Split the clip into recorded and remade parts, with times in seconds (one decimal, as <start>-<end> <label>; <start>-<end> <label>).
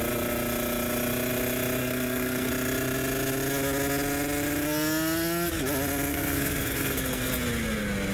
0.0-1.8 recorded; 1.8-2.5 remade; 2.5-6.1 recorded; 6.1-7.3 remade; 7.3-8.1 recorded